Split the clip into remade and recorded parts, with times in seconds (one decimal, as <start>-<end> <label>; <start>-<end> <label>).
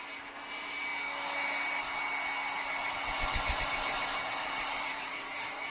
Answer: 0.0-4.1 recorded; 4.1-5.7 remade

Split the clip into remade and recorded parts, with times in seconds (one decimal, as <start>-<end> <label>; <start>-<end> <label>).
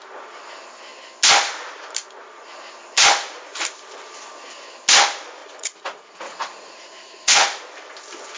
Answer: 0.0-5.4 recorded; 5.4-7.6 remade; 7.6-8.4 recorded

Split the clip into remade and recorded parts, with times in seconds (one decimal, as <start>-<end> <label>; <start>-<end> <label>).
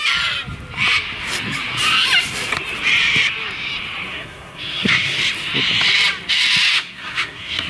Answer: 0.0-4.1 recorded; 4.1-5.2 remade; 5.2-6.7 recorded; 6.7-7.7 remade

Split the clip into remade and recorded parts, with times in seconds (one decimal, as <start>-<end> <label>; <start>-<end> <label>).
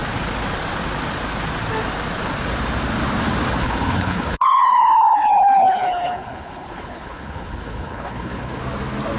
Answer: 0.0-3.6 recorded; 3.6-8.6 remade; 8.6-9.2 recorded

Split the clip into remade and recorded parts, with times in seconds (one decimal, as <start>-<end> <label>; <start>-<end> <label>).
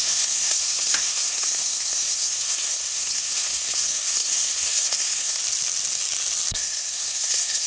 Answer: 0.0-5.4 remade; 5.4-6.5 recorded; 6.5-7.7 remade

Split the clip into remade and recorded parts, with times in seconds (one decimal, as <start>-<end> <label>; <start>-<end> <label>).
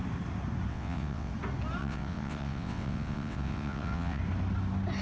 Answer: 0.0-0.7 recorded; 0.7-1.3 remade; 1.3-1.8 recorded; 1.8-4.2 remade; 4.2-5.0 recorded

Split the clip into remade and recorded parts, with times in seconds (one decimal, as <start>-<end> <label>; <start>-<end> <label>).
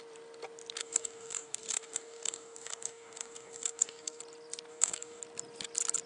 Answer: 0.0-0.8 recorded; 0.8-4.2 remade; 4.2-4.7 recorded; 4.7-5.2 remade; 5.2-6.1 recorded